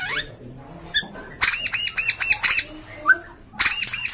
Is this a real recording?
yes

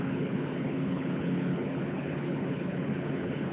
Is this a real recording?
no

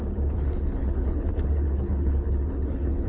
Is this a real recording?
no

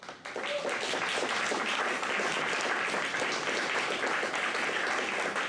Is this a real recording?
yes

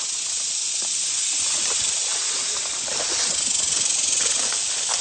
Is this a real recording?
yes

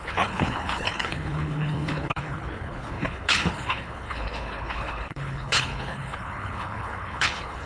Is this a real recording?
no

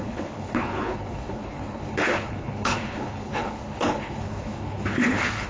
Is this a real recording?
no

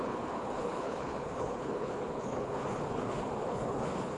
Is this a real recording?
no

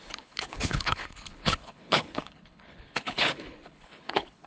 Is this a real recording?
no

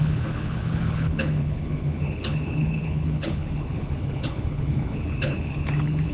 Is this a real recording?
no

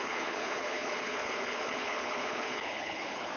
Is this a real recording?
no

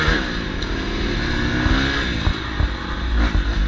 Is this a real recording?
yes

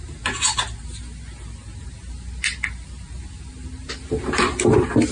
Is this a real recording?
yes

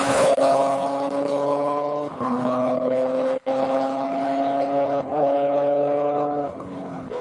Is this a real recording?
no